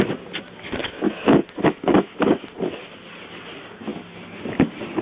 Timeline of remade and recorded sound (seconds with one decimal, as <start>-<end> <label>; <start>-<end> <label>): 0.0-0.8 recorded; 0.8-2.1 remade; 2.1-5.0 recorded